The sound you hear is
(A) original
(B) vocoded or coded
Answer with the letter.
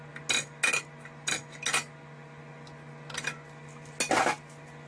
A